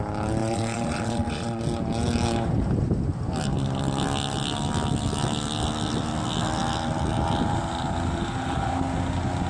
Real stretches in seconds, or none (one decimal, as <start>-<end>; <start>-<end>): 0.0-0.4; 1.6-9.5